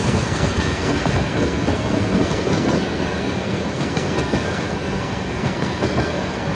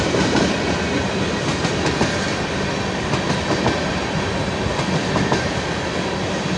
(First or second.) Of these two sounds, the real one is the second